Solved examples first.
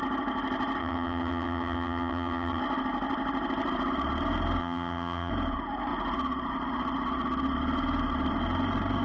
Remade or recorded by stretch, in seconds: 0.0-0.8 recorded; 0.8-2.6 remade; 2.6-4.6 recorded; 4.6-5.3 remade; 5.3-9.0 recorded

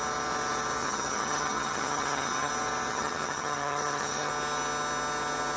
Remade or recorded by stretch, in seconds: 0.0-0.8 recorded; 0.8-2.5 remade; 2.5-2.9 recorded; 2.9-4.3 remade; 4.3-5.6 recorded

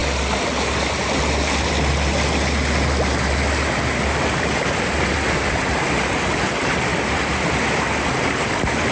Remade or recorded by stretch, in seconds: 0.0-8.9 recorded

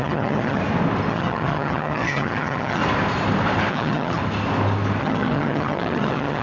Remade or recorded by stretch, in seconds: 0.0-0.6 remade; 0.6-1.1 recorded; 1.1-2.8 remade; 2.8-3.7 recorded; 3.7-4.2 remade; 4.2-5.0 recorded; 5.0-6.4 remade